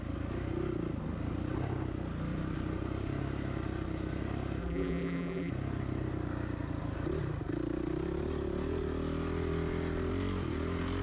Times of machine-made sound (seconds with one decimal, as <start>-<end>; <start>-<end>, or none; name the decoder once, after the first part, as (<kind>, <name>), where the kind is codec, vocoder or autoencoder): 4.6-5.5 (vocoder, BigVGAN v2)